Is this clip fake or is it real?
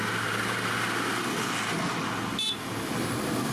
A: real